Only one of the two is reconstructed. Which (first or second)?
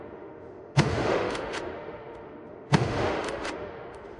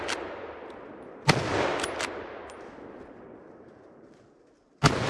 first